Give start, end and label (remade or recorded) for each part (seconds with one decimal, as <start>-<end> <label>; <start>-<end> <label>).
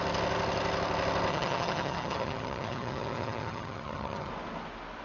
0.0-1.3 recorded; 1.3-4.3 remade; 4.3-5.0 recorded